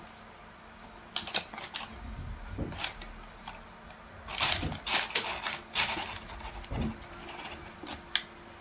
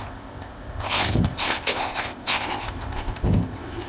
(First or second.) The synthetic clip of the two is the second